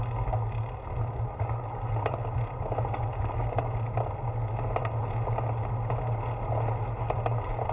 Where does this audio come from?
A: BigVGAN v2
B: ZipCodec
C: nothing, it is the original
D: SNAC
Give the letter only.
C